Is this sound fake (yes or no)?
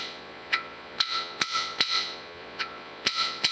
yes